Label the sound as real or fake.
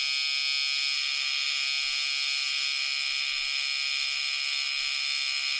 real